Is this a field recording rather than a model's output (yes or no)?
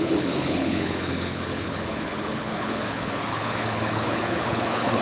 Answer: no